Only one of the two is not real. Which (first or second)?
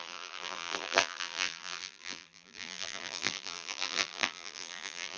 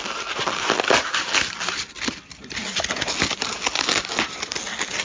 first